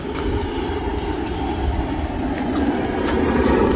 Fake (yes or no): no